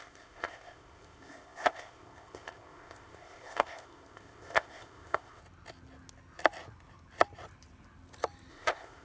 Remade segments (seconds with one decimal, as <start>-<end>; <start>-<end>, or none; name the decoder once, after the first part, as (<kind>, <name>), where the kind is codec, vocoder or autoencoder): 0.0-5.4 (codec, ZipCodec); 8.5-9.0